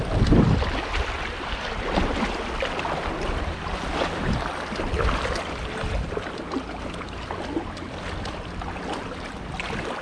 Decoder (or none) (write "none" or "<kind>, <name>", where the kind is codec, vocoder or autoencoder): none